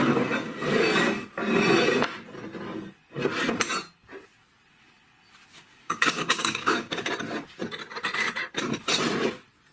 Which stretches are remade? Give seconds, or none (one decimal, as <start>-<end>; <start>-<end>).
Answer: 5.5-7.1